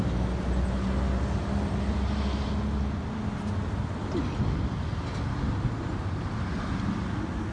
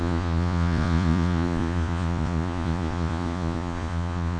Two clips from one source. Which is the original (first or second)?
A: first